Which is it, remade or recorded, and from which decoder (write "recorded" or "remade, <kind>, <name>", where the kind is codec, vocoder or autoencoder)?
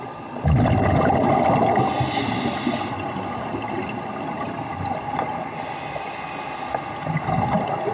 recorded